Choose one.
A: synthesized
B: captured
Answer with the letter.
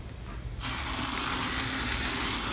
B